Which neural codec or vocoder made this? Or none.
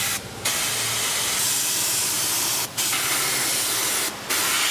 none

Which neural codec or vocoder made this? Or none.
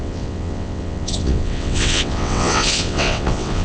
vocoder, WaveNeXt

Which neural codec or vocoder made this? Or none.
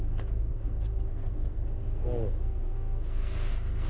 codec, SNAC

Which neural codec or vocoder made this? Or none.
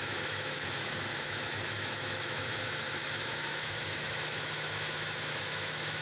autoencoder, DAC-VAE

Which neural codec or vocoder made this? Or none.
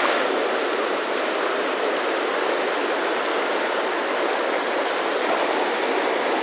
none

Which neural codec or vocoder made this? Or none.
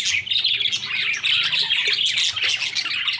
none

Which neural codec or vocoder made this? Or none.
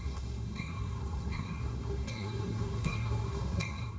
codec, SNAC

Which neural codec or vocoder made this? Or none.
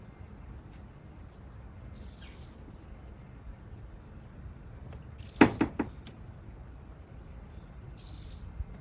none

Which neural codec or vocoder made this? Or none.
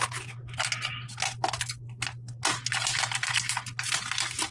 none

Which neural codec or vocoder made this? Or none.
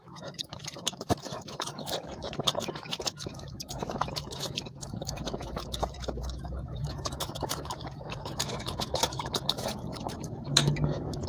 autoencoder, DAC-VAE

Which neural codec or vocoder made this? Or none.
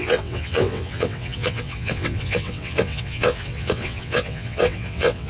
vocoder, WaveNeXt